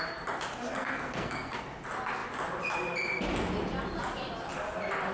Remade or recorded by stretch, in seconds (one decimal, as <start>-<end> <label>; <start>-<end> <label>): 0.0-0.7 recorded; 0.7-1.6 remade; 1.6-5.1 recorded